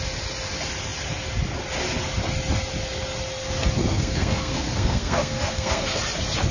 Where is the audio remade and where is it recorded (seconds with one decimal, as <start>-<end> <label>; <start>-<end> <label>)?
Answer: 0.0-3.8 recorded; 3.8-6.0 remade; 6.0-6.5 recorded